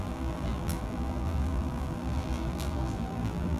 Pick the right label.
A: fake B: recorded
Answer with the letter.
A